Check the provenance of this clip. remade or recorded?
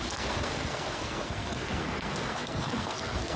remade